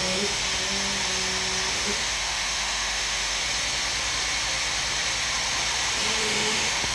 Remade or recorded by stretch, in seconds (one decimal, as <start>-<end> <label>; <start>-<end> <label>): 0.0-0.4 remade; 0.4-1.7 recorded; 1.7-3.4 remade; 3.4-6.2 recorded; 6.2-6.9 remade